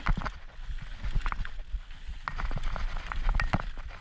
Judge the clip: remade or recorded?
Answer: recorded